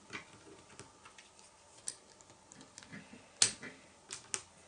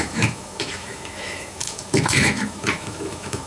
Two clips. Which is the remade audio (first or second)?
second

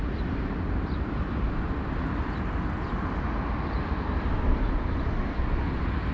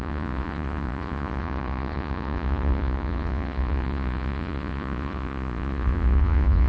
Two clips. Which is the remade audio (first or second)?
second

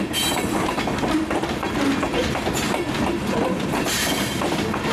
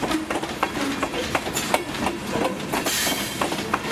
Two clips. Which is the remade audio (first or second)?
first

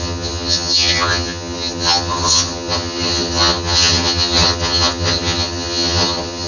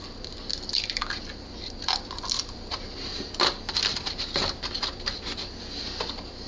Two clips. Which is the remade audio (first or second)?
first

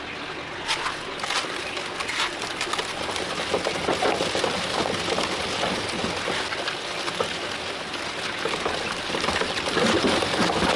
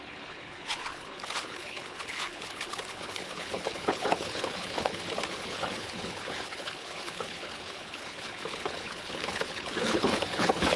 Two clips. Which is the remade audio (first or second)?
second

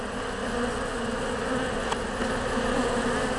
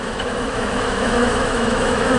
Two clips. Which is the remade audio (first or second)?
second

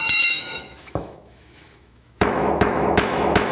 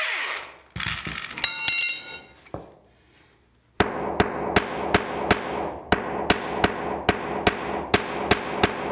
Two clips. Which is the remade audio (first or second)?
first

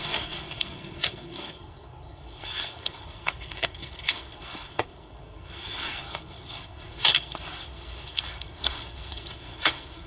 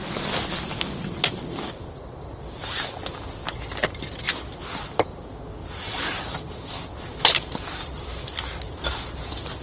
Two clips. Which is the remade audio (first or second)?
first